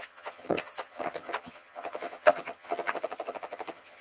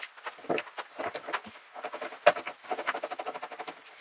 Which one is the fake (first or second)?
first